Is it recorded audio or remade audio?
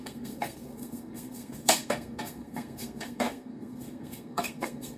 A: remade